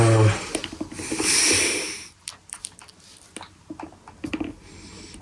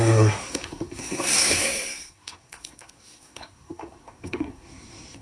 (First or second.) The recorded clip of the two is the first